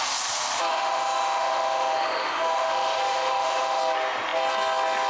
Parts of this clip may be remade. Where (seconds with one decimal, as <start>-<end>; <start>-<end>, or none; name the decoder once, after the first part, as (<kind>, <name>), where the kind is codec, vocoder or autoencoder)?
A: 0.7-3.8 (autoencoder, DAC-VAE)